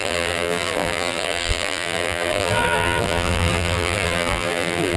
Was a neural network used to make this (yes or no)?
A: yes